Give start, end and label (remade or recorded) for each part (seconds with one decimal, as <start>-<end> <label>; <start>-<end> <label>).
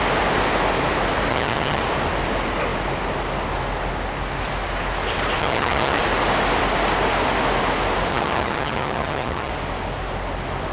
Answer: 0.0-1.3 recorded; 1.3-1.8 remade; 1.8-5.4 recorded; 5.4-6.0 remade; 6.0-8.1 recorded; 8.1-9.5 remade; 9.5-10.7 recorded